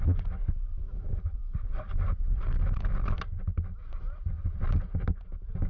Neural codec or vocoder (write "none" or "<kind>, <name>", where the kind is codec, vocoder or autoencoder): none